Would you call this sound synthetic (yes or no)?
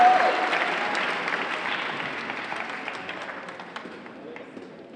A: no